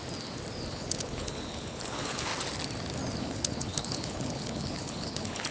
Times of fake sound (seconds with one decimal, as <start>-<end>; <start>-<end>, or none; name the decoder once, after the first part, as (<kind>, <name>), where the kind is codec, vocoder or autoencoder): 0.7-2.3 (codec, HILCodec); 3.2-5.5